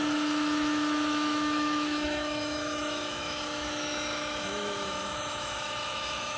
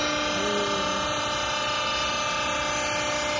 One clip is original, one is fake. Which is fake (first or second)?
first